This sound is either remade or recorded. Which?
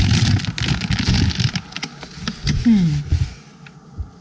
recorded